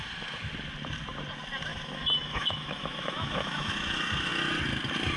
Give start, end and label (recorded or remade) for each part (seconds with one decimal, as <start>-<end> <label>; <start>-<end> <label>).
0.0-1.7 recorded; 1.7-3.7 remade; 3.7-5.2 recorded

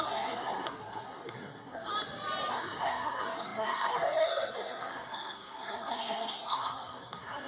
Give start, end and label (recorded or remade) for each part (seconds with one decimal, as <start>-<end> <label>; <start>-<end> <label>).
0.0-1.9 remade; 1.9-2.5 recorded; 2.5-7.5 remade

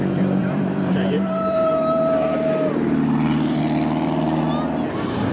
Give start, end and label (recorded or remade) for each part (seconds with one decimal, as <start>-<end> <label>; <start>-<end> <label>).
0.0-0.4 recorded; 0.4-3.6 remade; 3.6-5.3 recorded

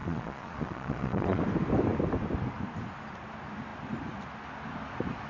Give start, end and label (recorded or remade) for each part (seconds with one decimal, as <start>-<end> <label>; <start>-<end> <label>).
0.0-1.4 remade; 1.4-5.3 recorded

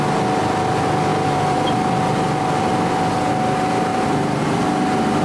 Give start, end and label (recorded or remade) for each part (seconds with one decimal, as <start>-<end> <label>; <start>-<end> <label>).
0.0-1.1 recorded; 1.1-3.3 remade; 3.3-3.9 recorded; 3.9-4.4 remade; 4.4-5.2 recorded